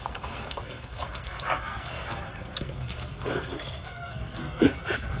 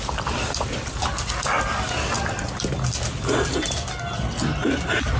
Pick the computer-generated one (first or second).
first